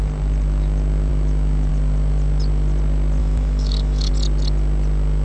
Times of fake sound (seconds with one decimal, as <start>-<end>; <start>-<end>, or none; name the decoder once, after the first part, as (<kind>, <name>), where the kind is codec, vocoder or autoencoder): 3.2-4.1 (autoencoder, DAC-VAE)